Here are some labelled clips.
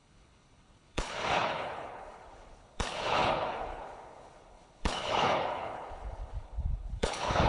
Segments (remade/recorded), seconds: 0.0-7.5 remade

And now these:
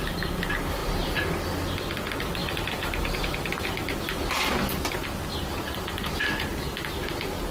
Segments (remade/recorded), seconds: 0.0-0.8 remade; 0.8-1.3 recorded; 1.3-7.5 remade

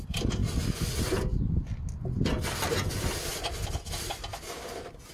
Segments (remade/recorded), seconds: 0.0-5.1 recorded